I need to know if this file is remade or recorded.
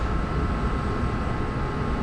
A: recorded